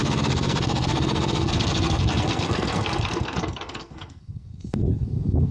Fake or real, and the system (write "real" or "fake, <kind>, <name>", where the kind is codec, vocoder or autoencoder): fake, codec, SNAC